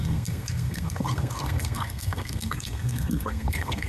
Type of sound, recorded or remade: remade